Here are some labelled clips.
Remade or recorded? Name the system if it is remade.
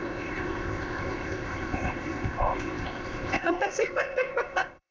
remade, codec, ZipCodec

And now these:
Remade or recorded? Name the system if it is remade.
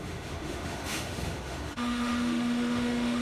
remade, autoencoder, DAC-VAE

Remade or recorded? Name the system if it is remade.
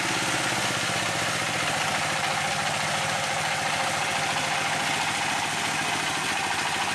recorded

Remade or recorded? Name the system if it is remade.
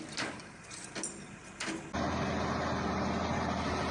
recorded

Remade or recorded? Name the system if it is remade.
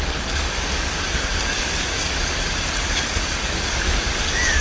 remade, codec, DAC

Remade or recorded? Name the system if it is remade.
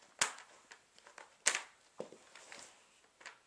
recorded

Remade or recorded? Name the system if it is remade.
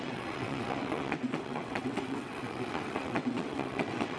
remade, vocoder, WaveNeXt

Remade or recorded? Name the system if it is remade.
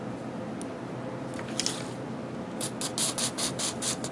recorded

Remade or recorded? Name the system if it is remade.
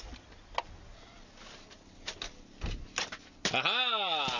recorded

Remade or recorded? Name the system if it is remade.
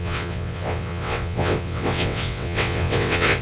remade, vocoder, WaveNeXt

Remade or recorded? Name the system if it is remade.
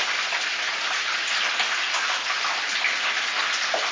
recorded